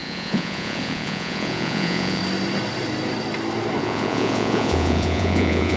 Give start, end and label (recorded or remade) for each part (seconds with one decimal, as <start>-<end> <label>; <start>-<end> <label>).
0.0-2.2 remade; 2.2-3.8 recorded; 3.8-5.8 remade